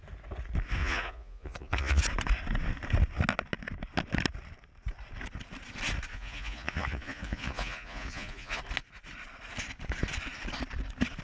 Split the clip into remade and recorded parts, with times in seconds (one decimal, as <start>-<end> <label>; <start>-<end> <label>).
0.0-0.8 recorded; 0.8-2.0 remade; 2.0-6.1 recorded; 6.1-8.6 remade; 8.6-11.2 recorded